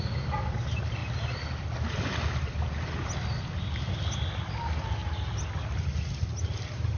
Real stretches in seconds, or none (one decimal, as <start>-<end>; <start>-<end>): 0.0-7.0